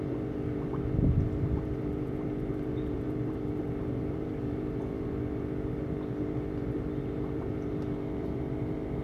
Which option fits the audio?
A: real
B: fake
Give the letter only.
B